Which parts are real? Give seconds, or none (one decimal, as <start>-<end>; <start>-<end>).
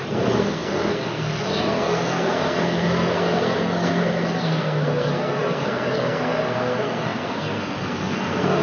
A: none